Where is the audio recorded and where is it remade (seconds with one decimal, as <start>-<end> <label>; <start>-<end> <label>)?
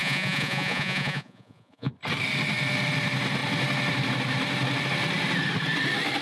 0.0-1.9 remade; 1.9-6.2 recorded